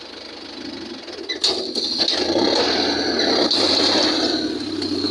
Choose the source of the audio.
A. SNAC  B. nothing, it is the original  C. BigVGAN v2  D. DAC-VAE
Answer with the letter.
B